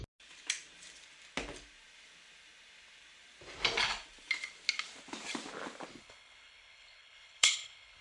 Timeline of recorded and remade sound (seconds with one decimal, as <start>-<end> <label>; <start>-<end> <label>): 0.0-6.0 recorded; 6.0-8.0 remade